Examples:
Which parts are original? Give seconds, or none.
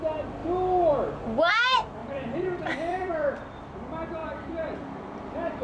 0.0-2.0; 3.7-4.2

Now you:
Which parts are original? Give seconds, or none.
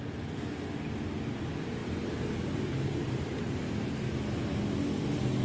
0.0-1.8; 3.4-5.4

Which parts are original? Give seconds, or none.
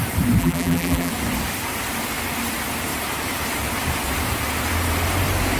0.0-0.4; 1.1-5.6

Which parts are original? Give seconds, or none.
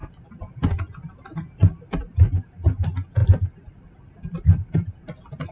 0.6-1.6; 2.1-3.2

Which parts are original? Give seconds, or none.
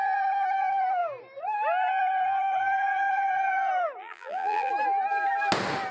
0.0-4.0; 4.7-5.9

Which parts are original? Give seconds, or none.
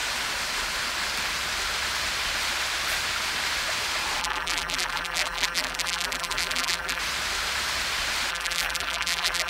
0.0-4.2; 7.0-8.3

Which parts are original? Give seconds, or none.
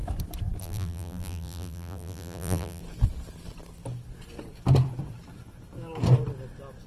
0.0-0.6; 2.8-6.9